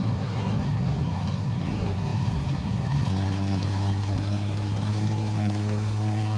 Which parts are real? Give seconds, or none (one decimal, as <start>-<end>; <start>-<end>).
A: none